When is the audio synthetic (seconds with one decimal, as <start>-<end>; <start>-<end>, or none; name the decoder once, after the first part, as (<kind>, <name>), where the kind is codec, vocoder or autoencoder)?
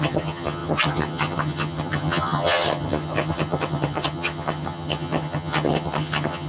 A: 0.0-6.5 (vocoder, HiFi-GAN)